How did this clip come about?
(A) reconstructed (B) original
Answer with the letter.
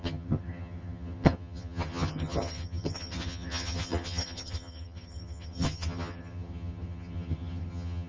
A